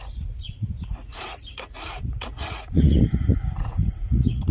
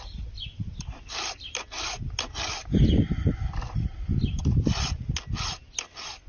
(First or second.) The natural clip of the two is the second